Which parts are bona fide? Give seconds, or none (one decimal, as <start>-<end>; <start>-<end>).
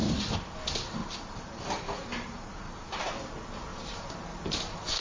3.0-3.7